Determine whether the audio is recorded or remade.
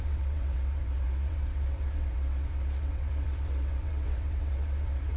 remade